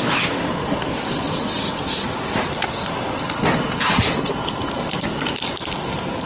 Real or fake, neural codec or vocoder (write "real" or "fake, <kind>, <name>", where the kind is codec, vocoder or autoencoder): real